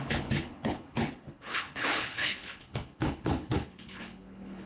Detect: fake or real fake